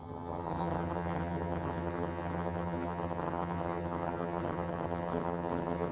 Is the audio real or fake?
fake